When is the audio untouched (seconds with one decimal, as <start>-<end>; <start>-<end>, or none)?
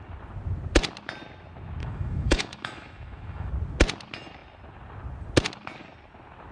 0.0-1.8; 3.5-6.5